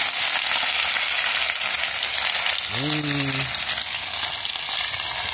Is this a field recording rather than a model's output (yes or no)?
yes